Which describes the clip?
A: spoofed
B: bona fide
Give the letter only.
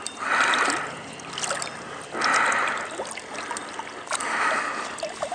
B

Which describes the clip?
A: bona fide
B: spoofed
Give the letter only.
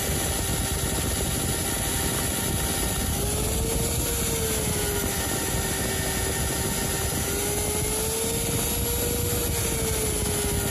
A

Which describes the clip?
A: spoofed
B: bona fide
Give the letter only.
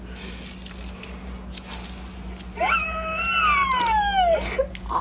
B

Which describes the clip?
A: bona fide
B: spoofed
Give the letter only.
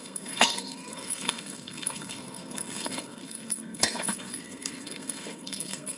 B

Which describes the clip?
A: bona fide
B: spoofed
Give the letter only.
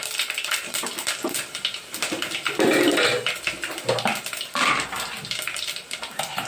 A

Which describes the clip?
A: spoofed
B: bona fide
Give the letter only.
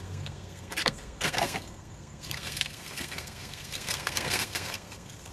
A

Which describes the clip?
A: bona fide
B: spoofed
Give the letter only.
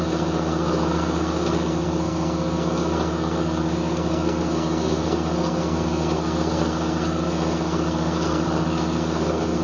B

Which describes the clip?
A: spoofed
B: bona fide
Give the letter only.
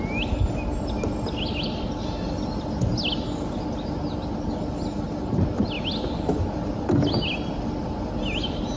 B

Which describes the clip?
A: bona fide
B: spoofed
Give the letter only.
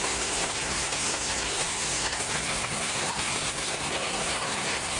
B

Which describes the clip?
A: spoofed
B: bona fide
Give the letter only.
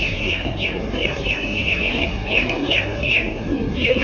A